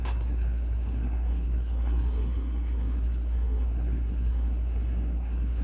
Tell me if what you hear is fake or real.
fake